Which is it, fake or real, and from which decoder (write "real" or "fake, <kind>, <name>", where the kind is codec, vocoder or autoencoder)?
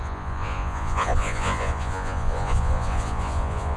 fake, vocoder, Vocos